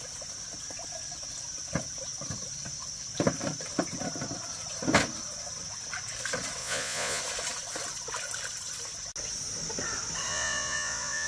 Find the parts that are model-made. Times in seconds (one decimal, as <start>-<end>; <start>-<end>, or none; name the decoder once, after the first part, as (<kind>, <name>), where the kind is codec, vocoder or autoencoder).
6.6-7.2 (vocoder, Vocos); 10.3-11.3